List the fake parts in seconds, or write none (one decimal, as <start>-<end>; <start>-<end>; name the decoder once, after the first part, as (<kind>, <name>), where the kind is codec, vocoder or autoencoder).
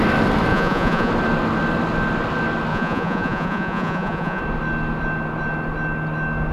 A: 0.5-1.1 (vocoder, Vocos); 2.7-4.4